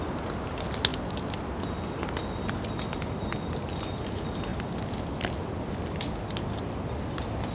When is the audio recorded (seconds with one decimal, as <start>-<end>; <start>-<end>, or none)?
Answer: 0.0-7.5